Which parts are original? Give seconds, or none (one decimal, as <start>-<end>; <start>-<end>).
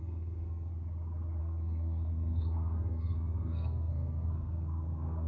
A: 0.7-1.4